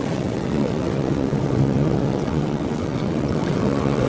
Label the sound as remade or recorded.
remade